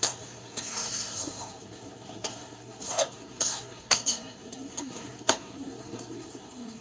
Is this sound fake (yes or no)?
yes